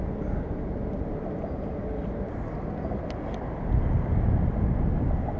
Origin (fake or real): real